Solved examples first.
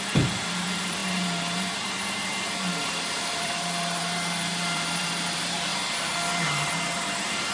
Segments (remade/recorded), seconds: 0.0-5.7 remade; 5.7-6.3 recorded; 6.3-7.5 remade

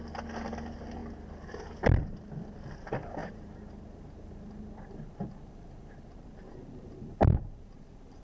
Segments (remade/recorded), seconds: 0.0-3.2 recorded; 3.2-8.2 remade

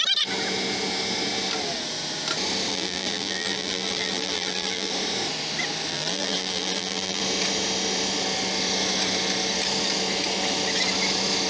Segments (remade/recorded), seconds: 0.0-2.7 recorded; 2.7-4.9 remade; 4.9-5.9 recorded; 5.9-7.2 remade; 7.2-11.5 recorded

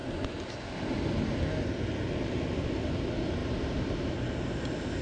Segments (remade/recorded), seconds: 0.0-3.4 recorded; 3.4-5.0 remade

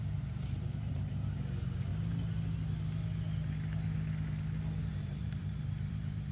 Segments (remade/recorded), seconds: 0.0-1.9 remade; 1.9-4.8 recorded; 4.8-6.3 remade